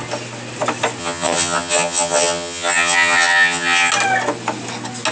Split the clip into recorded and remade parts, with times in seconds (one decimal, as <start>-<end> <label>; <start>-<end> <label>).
0.0-1.0 recorded; 1.0-3.9 remade; 3.9-5.1 recorded